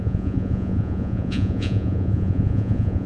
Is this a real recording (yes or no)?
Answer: no